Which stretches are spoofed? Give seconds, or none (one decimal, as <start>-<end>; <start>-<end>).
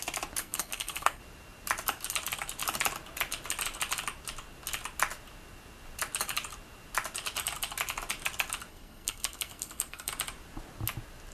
0.4-1.2; 8.7-10.1